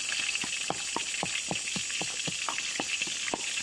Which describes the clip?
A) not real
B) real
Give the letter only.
B